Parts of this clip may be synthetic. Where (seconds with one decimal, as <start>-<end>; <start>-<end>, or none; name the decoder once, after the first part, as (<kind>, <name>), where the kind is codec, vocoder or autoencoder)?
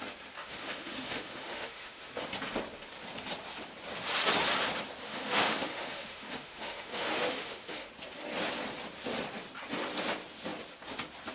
0.4-2.1 (autoencoder, DAC-VAE); 5.0-7.9